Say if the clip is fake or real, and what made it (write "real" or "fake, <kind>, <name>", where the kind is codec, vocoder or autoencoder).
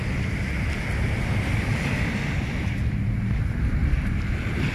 real